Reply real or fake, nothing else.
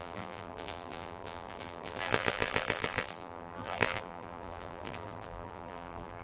fake